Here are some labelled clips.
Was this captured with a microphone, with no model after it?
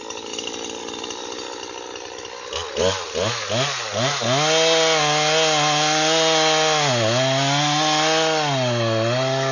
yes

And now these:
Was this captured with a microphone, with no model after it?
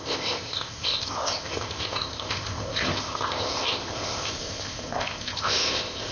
no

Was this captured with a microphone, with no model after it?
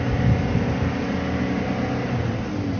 yes